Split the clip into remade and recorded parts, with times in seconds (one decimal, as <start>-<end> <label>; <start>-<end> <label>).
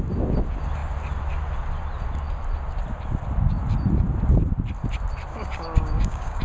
0.0-5.3 recorded; 5.3-6.4 remade